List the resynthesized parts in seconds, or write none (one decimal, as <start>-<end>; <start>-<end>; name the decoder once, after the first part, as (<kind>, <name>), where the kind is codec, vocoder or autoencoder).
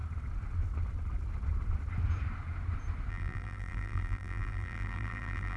3.1-5.6 (vocoder, BigVGAN v2)